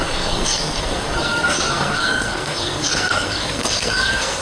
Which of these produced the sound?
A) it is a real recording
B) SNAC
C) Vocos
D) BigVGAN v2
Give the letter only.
B